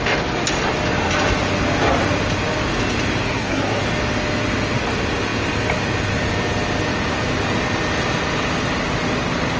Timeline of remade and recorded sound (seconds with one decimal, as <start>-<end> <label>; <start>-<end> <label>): 0.0-3.2 recorded; 3.2-3.8 remade; 3.8-9.6 recorded